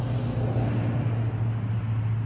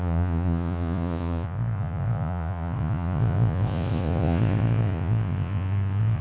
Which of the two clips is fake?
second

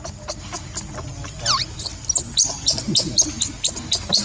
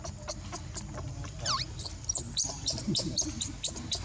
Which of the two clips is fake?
second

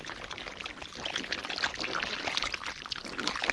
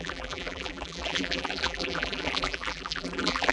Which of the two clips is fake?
second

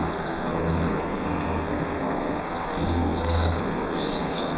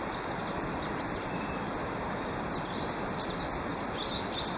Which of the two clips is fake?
first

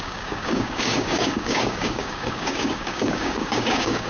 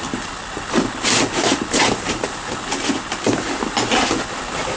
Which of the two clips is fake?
first